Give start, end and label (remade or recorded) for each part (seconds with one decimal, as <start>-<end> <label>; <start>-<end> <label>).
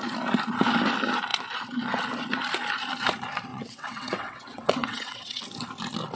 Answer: 0.0-3.5 recorded; 3.5-5.4 remade; 5.4-6.2 recorded